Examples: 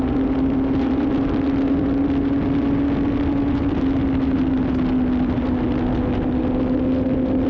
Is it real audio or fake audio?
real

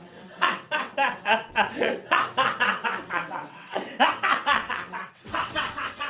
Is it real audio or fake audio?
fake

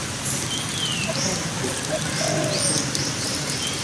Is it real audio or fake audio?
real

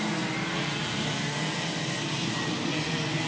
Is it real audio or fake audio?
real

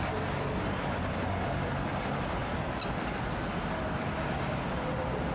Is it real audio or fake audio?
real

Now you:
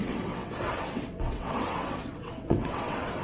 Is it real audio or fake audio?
fake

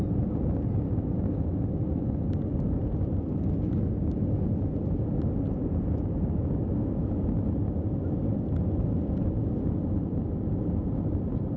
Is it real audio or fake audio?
real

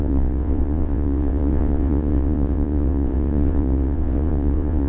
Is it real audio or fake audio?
fake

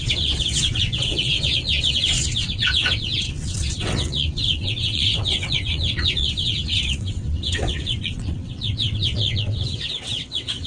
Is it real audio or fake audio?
fake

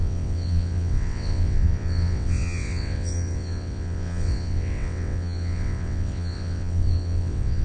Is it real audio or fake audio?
fake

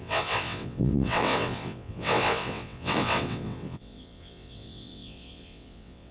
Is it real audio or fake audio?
fake